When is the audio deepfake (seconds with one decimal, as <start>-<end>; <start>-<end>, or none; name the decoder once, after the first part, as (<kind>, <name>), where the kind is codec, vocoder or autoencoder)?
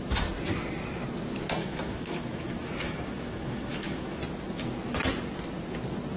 1.6-4.2 (autoencoder, DAC-VAE)